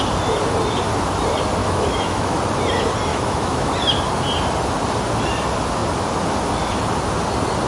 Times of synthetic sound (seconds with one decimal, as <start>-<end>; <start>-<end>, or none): 1.6-2.4; 3.1-3.7